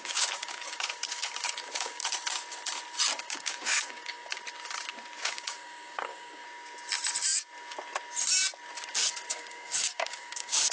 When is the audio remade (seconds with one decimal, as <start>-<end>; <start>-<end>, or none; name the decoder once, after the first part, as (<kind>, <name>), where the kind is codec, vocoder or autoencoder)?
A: 0.0-2.0 (codec, DAC); 3.2-4.4; 5.2-6.4; 9.3-10.7